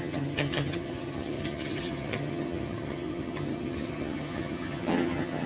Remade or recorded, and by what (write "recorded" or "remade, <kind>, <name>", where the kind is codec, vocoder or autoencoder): remade, vocoder, HiFi-GAN